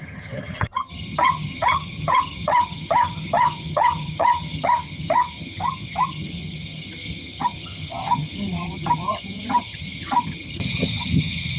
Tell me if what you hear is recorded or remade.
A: remade